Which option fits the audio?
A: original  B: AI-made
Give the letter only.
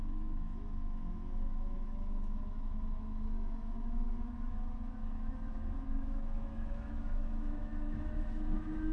B